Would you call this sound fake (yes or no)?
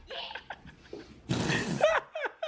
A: no